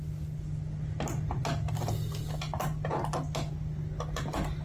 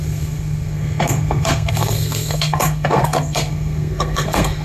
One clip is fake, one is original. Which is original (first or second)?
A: first